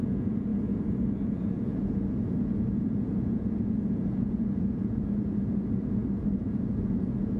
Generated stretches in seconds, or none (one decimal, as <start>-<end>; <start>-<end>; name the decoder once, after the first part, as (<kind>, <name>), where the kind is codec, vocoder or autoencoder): 0.0-7.4 (vocoder, Vocos)